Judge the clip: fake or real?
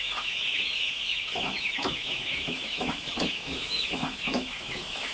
fake